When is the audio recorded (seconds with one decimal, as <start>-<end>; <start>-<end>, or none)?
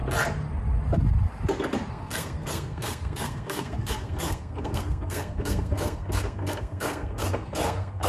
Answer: 0.0-1.9